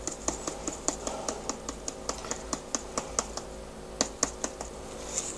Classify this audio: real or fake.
real